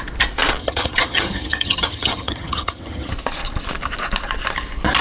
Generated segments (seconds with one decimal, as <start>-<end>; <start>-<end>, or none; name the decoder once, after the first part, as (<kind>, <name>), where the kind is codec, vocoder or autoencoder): 0.6-3.1 (vocoder, HiFi-GAN)